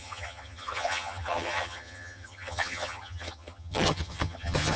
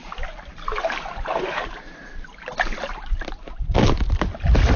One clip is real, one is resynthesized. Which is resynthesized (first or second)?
first